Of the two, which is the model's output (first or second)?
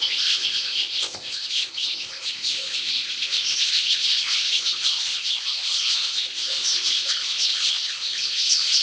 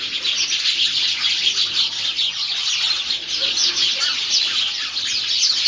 first